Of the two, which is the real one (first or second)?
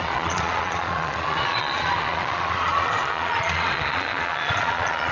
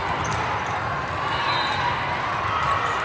second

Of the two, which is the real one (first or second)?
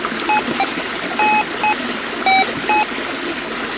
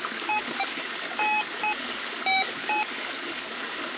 first